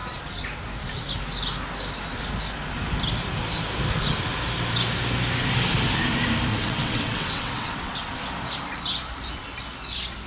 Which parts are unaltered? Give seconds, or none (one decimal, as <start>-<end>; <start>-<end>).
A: 0.0-6.5; 8.2-10.3